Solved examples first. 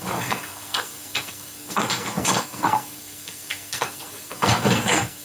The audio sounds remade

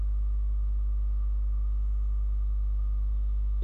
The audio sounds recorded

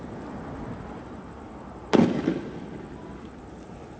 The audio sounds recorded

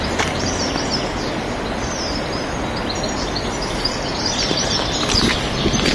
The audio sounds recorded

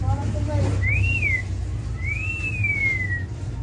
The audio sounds recorded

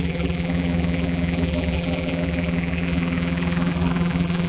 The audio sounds remade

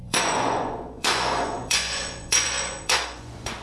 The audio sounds remade